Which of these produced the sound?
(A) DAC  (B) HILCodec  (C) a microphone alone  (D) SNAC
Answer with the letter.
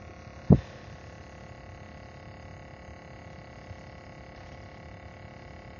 C